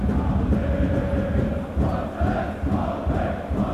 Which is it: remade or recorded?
recorded